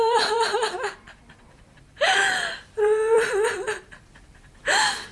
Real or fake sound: fake